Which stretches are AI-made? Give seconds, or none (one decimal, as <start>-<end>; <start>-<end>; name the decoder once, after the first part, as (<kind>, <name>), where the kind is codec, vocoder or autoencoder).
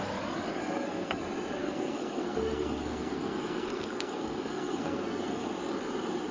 0.5-1.2 (codec, SNAC); 1.6-5.4